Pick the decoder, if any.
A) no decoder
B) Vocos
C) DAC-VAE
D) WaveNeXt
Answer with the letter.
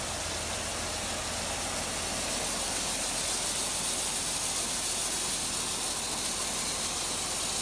A